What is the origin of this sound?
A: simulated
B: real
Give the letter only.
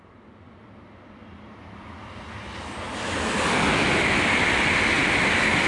B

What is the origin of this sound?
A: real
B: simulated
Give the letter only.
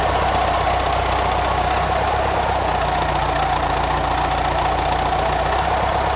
A